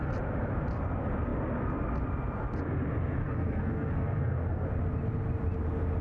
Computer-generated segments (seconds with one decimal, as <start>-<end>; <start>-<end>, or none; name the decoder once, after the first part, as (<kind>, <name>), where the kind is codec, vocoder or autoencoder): 3.2-4.7 (codec, SNAC)

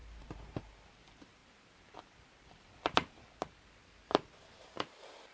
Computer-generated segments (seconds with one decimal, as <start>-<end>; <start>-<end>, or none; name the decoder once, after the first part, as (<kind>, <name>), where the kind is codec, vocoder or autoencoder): 0.0-1.4 (vocoder, BigVGAN v2); 4.6-5.3

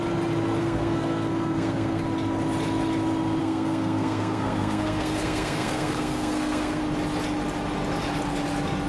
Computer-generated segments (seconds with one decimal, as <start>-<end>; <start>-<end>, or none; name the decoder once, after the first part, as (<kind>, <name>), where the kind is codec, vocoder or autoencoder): 0.6-2.0 (codec, SNAC); 3.4-6.8

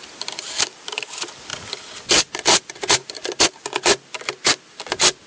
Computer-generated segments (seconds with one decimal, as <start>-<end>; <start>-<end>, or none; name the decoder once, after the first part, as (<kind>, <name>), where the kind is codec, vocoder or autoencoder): none

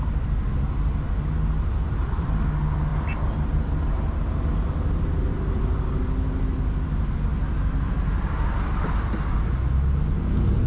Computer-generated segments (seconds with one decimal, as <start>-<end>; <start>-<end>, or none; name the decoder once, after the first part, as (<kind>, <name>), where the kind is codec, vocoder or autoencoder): 2.0-2.5 (vocoder, BigVGAN v2)

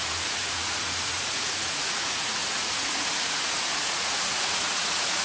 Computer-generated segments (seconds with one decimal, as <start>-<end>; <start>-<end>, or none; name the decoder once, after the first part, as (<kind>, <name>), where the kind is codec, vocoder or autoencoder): 0.0-5.2 (vocoder, Vocos)

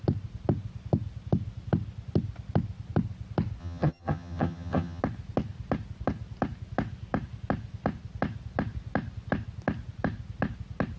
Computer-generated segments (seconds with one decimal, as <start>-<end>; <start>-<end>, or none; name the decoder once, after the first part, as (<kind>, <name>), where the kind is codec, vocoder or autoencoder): 3.6-5.0 (vocoder, HiFi-GAN)

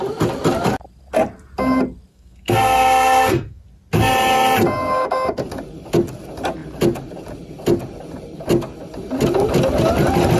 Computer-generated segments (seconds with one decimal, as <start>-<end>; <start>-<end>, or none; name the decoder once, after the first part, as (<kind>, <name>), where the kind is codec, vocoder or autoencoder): 2.1-3.6 (codec, SNAC)